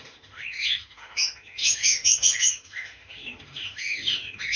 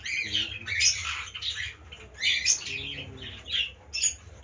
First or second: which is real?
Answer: second